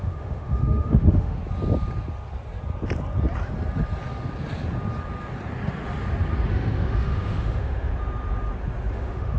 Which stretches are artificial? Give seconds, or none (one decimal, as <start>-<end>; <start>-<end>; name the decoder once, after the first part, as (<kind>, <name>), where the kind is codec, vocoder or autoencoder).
0.0-1.4 (autoencoder, DAC-VAE); 6.5-7.9; 8.9-9.4